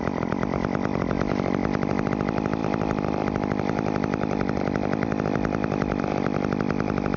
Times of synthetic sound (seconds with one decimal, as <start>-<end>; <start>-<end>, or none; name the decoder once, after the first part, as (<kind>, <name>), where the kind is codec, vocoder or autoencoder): none